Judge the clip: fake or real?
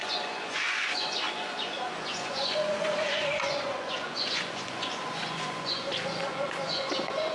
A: fake